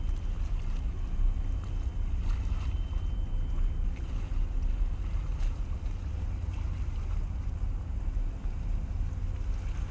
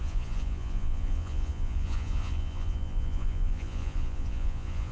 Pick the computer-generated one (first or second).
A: second